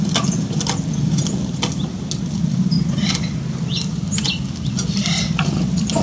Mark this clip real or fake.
real